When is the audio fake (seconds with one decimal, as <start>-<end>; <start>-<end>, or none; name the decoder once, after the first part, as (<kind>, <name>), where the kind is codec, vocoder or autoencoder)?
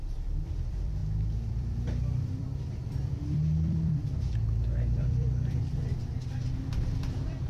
0.0-6.0 (vocoder, BigVGAN v2); 6.5-7.5